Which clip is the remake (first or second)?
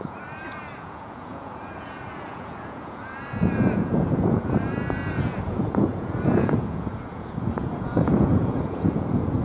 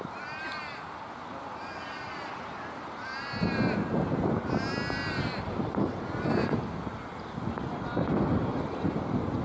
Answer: first